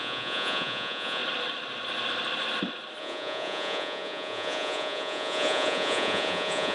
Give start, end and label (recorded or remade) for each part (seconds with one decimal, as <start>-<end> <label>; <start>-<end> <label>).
0.0-1.2 remade; 1.2-3.0 recorded; 3.0-6.7 remade